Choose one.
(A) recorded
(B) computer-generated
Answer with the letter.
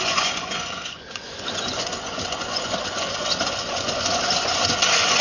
B